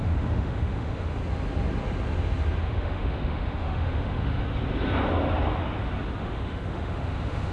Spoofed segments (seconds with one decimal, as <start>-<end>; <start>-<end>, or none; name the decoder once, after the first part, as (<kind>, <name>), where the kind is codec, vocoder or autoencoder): 0.0-1.2 (autoencoder, DAC-VAE); 2.6-4.4; 6.2-7.5